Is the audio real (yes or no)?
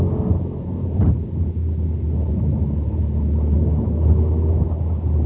yes